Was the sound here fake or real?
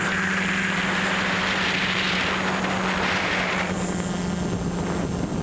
real